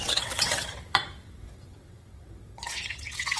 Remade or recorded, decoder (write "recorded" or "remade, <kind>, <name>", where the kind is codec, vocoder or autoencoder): remade, vocoder, WaveNeXt